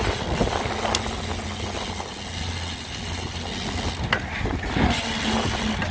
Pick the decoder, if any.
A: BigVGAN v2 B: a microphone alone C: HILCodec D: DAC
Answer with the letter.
B